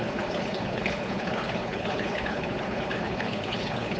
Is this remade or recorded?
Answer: remade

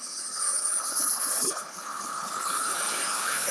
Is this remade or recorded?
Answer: remade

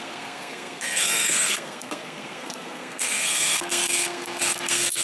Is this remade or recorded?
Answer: remade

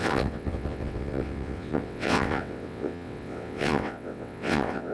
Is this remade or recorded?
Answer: remade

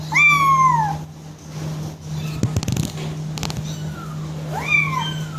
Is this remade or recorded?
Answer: recorded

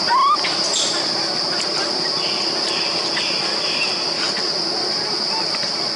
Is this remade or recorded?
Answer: recorded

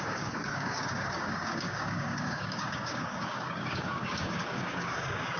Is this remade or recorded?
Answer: remade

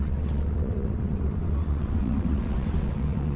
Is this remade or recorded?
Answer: remade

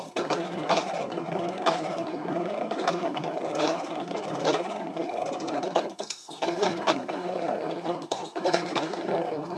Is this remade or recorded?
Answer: remade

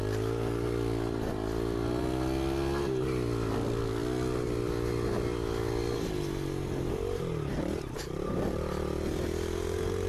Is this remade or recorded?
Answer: recorded